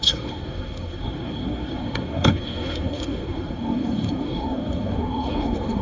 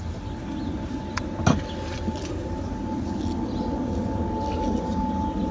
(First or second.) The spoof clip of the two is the first